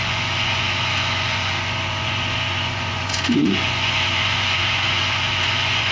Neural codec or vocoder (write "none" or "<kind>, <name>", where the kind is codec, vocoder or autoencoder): vocoder, Vocos